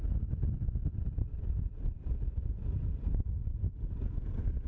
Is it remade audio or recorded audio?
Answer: recorded